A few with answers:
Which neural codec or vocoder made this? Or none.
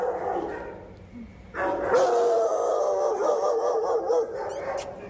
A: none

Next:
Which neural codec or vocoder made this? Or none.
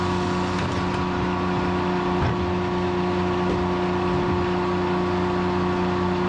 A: none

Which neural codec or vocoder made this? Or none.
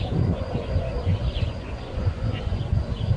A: vocoder, Vocos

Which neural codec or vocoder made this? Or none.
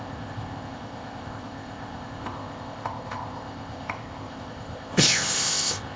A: codec, ZipCodec